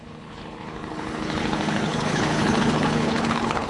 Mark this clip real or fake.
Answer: fake